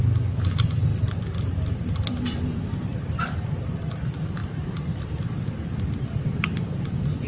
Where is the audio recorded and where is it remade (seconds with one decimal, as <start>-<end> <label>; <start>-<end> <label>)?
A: 0.0-0.9 recorded; 0.9-2.6 remade; 2.6-4.4 recorded; 4.4-5.1 remade; 5.1-7.3 recorded